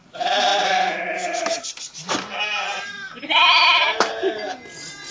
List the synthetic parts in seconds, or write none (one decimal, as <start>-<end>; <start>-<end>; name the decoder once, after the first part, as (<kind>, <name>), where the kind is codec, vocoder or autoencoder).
none